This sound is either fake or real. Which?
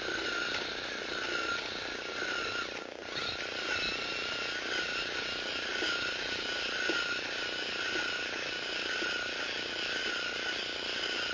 real